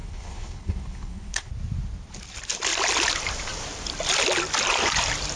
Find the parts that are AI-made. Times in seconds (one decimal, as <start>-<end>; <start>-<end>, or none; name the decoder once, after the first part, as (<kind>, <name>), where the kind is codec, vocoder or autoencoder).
0.0-1.5 (codec, HILCodec)